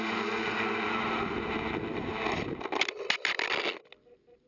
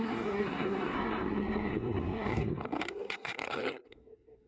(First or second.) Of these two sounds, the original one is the first